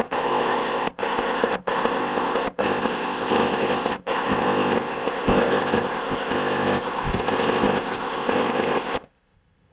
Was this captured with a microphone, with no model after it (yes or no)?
no